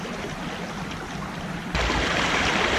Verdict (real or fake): real